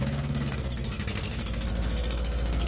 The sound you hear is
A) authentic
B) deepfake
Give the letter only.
B